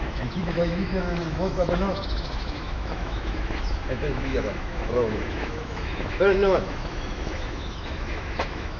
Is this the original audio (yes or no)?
no